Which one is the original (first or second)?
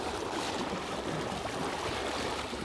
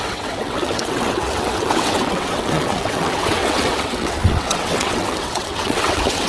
first